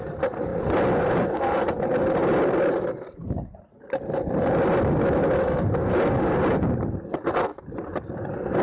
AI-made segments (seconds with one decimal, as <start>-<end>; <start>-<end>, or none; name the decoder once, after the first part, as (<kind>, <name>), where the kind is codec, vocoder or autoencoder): none

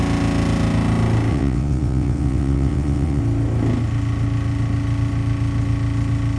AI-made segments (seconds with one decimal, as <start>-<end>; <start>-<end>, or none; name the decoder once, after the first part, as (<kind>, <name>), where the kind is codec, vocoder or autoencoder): 1.3-3.2 (vocoder, WaveNeXt)